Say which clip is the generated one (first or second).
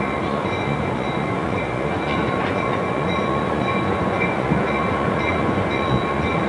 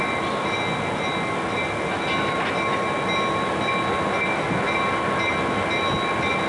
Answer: first